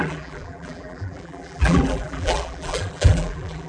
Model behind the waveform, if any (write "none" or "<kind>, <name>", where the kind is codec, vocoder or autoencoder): vocoder, BigVGAN v2